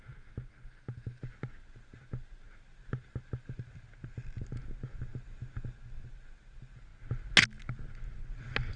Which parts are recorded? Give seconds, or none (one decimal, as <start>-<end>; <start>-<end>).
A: 0.0-8.8